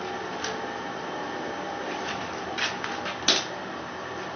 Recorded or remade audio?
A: recorded